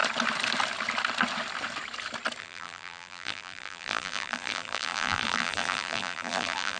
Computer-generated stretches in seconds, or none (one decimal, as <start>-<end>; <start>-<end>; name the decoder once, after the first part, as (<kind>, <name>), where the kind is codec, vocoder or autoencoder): 2.4-6.8 (vocoder, BigVGAN v2)